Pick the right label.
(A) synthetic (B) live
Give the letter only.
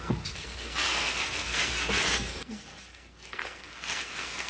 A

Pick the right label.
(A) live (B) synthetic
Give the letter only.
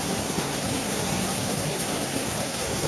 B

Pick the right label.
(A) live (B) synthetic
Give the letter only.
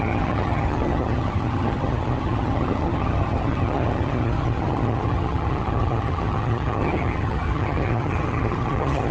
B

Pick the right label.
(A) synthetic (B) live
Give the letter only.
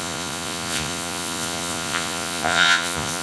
A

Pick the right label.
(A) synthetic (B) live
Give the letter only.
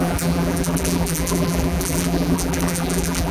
A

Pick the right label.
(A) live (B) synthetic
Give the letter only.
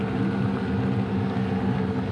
A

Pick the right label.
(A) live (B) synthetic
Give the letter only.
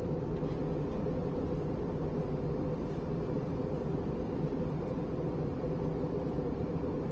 A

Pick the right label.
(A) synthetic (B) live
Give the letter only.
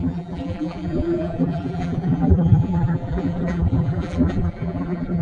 A